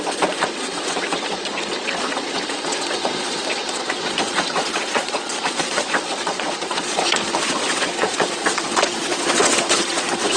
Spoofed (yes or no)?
yes